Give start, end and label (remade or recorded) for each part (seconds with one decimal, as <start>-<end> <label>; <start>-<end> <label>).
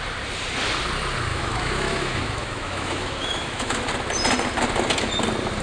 0.0-1.3 recorded; 1.3-3.8 remade; 3.8-5.6 recorded